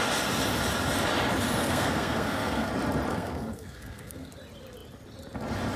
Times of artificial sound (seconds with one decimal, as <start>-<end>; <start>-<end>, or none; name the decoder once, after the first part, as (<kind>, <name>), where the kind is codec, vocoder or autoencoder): 1.6-2.7 (codec, SNAC); 3.1-4.3